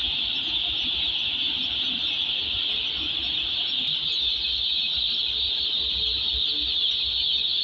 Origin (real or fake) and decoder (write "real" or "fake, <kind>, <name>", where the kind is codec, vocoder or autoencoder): real